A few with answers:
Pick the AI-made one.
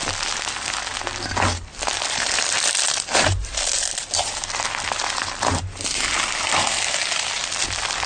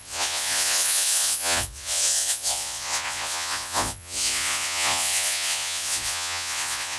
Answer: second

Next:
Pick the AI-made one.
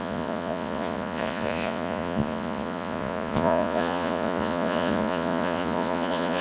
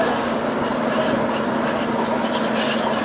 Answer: first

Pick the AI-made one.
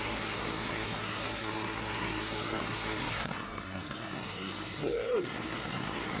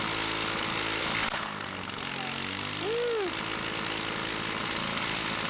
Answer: first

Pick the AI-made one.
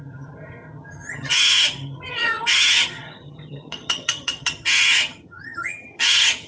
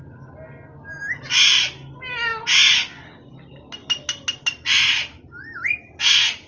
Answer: first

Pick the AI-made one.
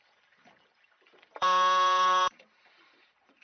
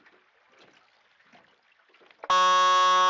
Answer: first